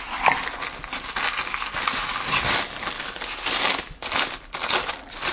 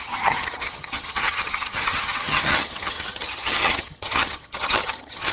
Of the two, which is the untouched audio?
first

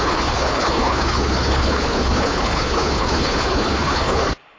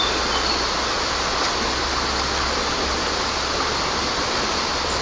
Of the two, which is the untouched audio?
second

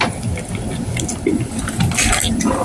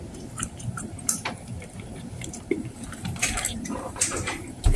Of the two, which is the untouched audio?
first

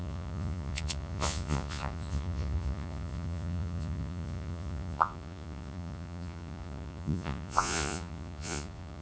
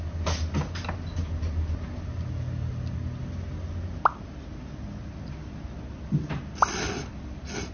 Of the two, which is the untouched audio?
second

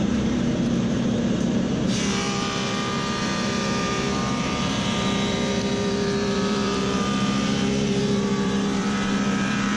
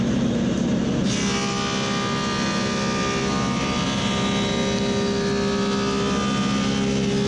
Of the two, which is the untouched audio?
second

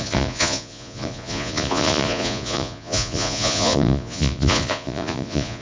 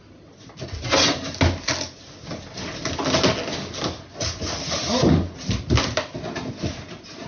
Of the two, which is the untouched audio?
second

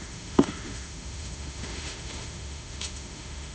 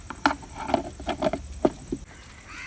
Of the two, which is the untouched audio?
second